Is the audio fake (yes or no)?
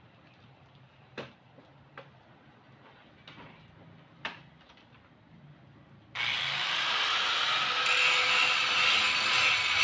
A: no